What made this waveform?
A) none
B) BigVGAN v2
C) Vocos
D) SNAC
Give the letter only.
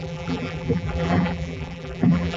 B